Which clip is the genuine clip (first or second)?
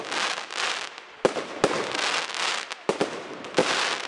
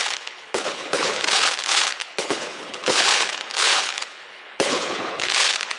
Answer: first